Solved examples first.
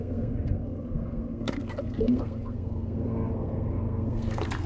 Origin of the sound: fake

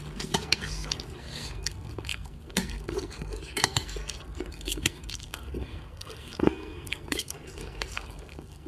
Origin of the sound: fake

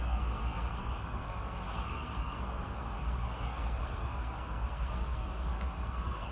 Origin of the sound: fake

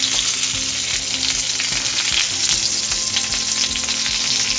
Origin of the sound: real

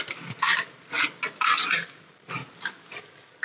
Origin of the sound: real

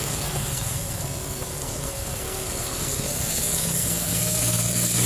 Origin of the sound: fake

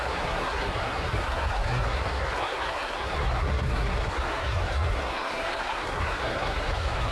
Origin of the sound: fake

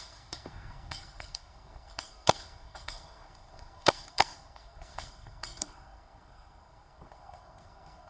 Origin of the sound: fake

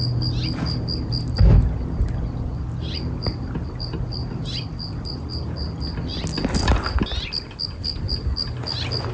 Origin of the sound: real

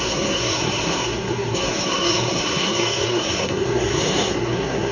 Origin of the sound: fake